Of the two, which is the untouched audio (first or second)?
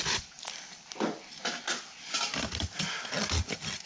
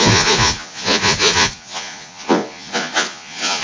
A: first